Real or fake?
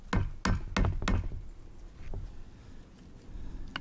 real